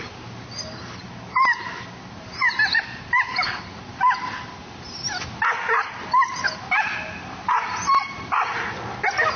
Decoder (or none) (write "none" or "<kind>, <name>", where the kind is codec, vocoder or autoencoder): none